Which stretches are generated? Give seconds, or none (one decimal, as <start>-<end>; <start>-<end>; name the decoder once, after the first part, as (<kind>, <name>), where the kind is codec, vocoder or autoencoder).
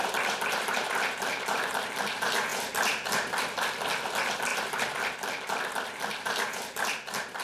0.0-1.8 (vocoder, BigVGAN v2)